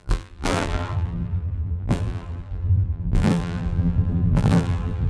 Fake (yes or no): yes